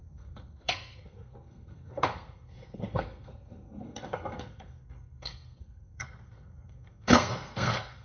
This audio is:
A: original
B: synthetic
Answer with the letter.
B